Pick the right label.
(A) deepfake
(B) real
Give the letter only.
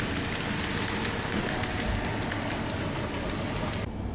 B